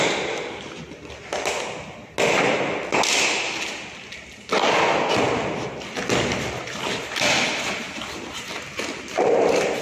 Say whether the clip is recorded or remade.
recorded